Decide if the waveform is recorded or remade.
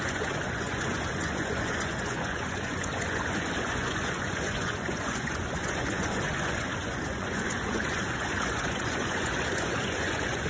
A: remade